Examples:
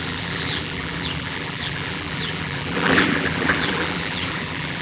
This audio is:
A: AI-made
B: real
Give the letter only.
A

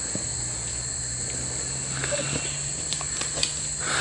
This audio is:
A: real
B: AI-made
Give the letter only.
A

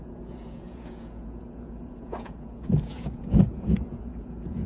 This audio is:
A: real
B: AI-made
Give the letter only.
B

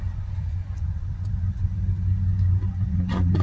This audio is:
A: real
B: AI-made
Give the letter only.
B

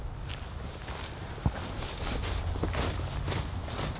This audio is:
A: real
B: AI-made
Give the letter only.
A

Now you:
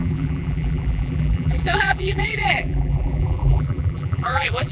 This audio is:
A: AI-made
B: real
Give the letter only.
A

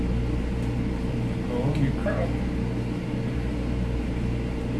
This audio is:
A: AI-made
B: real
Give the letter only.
B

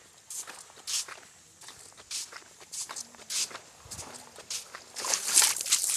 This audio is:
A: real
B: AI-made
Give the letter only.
A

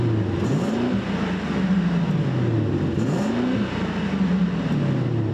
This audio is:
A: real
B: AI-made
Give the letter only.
A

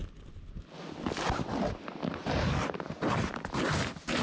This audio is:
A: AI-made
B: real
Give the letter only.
B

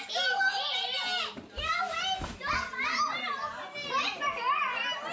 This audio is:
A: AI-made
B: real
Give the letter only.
B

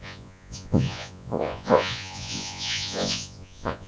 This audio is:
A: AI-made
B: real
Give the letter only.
A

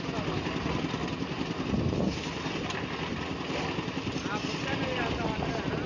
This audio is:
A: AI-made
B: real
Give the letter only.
B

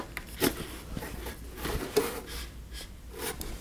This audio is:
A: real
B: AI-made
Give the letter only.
A